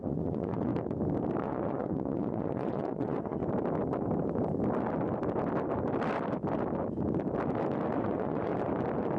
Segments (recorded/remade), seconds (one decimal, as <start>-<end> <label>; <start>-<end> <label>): 0.0-0.7 remade; 0.7-1.4 recorded; 1.4-3.4 remade; 3.4-8.0 recorded; 8.0-8.5 remade; 8.5-9.2 recorded